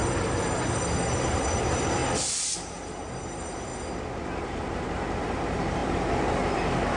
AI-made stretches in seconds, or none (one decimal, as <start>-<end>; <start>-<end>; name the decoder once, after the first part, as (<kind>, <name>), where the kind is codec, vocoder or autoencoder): 0.7-2.0 (vocoder, BigVGAN v2); 3.2-3.7; 4.2-7.0